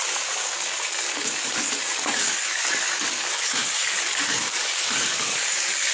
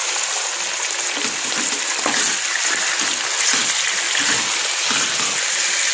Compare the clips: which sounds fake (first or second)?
first